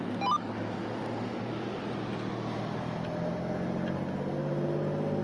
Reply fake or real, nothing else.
real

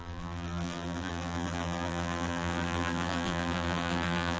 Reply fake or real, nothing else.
fake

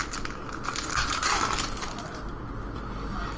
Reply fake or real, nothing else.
real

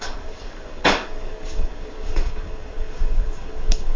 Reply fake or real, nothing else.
fake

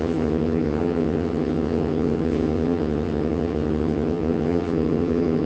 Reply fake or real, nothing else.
fake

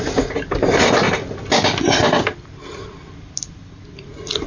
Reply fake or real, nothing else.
real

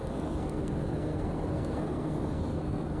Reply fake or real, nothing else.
fake